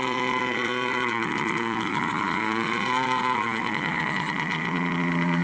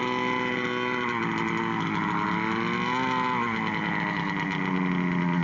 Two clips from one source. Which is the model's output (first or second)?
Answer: first